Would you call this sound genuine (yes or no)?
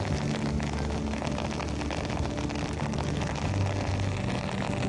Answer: yes